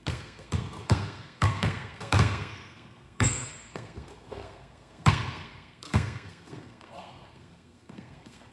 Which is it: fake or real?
fake